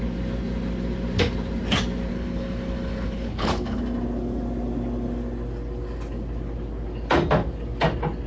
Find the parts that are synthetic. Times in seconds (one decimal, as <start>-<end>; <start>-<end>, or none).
2.1-3.8